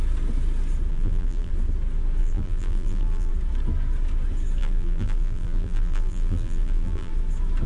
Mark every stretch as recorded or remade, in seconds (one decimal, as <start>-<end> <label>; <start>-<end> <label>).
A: 0.0-0.9 recorded; 0.9-1.5 remade; 1.5-2.2 recorded; 2.2-3.3 remade; 3.3-4.6 recorded; 4.6-7.1 remade; 7.1-7.7 recorded